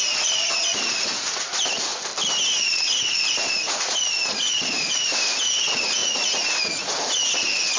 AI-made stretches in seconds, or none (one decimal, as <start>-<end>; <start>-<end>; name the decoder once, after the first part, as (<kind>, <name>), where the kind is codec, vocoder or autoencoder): 0.0-2.1 (vocoder, Vocos); 2.6-7.8